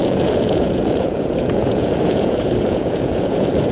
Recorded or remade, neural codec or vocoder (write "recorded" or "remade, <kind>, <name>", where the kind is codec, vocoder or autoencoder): remade, vocoder, Vocos